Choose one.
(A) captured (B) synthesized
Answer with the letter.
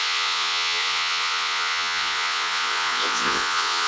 B